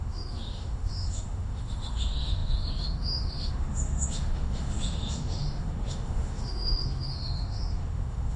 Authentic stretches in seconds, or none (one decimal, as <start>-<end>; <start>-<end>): none